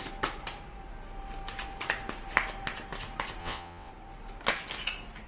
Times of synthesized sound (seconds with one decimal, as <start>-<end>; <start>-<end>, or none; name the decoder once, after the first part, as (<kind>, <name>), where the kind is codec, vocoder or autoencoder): 3.4-3.9 (vocoder, WaveNeXt)